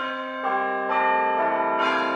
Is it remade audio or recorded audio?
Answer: recorded